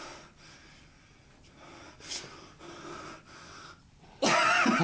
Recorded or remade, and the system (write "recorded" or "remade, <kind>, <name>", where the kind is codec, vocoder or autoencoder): recorded